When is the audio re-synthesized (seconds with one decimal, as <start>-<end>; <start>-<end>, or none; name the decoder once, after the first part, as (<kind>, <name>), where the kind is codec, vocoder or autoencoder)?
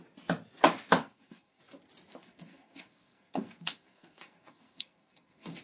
1.0-1.6 (codec, SNAC); 2.1-5.6